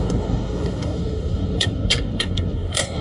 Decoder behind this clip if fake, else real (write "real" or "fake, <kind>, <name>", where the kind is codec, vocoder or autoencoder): fake, codec, SNAC